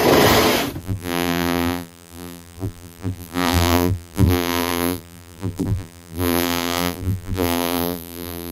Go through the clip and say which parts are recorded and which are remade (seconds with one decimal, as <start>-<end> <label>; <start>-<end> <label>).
0.0-0.8 recorded; 0.8-8.5 remade